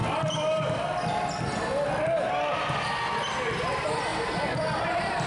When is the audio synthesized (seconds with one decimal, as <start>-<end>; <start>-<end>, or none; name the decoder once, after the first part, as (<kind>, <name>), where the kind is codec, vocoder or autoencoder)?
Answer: 3.2-4.1 (vocoder, BigVGAN v2); 4.8-5.3